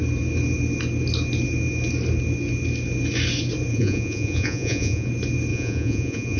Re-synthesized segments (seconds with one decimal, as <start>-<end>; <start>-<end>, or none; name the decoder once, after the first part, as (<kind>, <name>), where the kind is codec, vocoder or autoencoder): 3.7-5.1 (vocoder, Vocos); 5.5-6.4